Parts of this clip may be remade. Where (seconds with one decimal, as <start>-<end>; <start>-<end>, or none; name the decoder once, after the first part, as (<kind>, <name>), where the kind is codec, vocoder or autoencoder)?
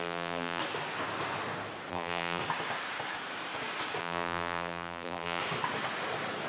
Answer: 0.0-0.6 (vocoder, BigVGAN v2); 1.9-2.4; 4.0-5.4